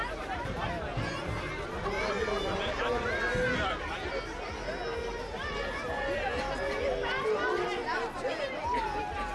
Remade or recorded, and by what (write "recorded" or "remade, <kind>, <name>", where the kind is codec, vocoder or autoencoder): recorded